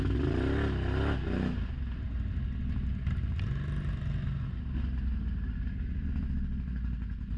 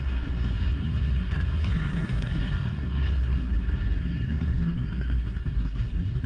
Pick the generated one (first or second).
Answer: second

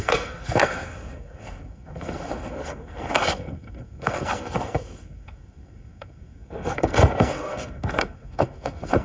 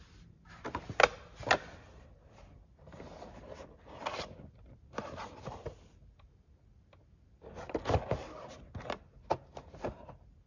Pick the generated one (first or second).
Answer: first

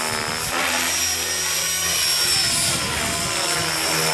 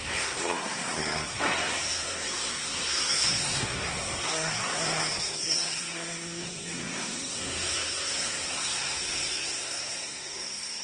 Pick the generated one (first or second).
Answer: second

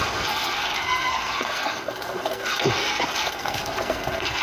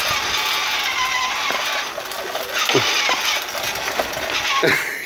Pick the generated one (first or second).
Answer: first